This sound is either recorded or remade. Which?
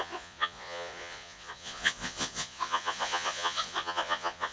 remade